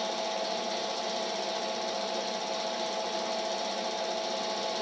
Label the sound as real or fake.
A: real